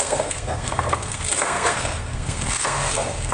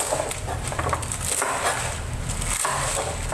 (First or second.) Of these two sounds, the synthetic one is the first